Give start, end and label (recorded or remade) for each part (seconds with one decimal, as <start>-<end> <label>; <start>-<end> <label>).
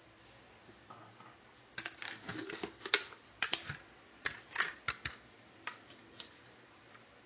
0.0-2.3 recorded; 2.3-3.9 remade; 3.9-5.3 recorded; 5.3-5.9 remade; 5.9-7.3 recorded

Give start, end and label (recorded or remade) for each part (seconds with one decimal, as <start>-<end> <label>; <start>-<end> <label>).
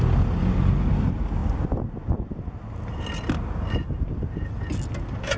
0.0-5.4 recorded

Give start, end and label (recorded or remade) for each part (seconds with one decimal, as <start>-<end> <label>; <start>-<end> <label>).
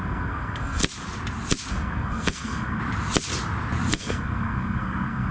0.0-0.8 remade; 0.8-1.7 recorded; 1.7-2.8 remade; 2.8-3.9 recorded; 3.9-5.3 remade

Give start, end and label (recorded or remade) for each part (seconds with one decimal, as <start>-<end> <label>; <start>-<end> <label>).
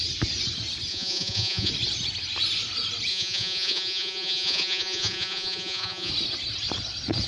0.0-0.9 recorded; 0.9-1.7 remade; 1.7-3.1 recorded; 3.1-6.1 remade; 6.1-7.3 recorded